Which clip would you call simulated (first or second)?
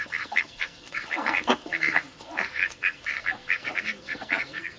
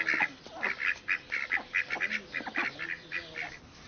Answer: first